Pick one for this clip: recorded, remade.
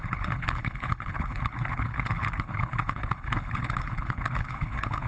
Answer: remade